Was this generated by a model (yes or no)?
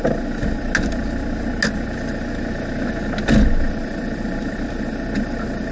no